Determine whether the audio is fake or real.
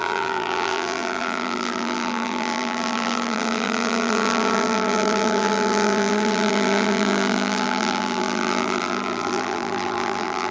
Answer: fake